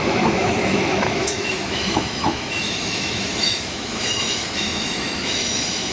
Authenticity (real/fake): fake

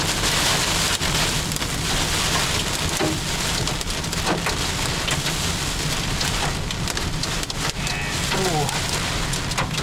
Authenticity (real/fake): real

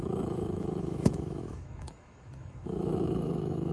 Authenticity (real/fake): fake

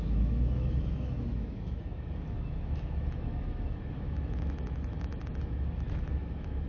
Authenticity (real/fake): fake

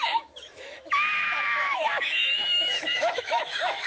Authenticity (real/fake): fake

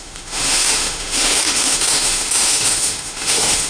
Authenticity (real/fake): fake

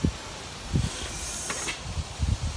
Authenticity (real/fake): real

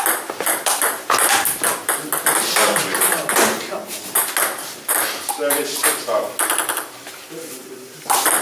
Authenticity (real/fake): real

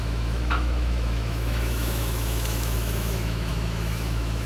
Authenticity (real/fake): fake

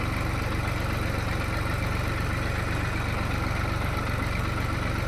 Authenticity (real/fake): real